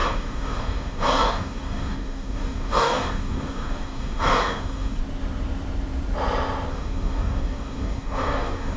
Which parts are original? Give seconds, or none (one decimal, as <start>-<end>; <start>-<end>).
5.0-6.7